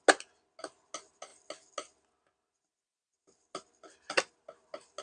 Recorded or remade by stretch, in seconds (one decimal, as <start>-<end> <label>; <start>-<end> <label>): 0.0-5.0 recorded